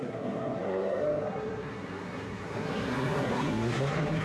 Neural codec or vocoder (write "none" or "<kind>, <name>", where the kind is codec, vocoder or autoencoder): codec, SNAC